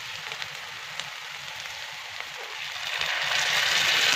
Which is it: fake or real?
real